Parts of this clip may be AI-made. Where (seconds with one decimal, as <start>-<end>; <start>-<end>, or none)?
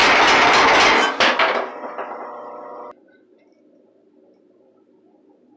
none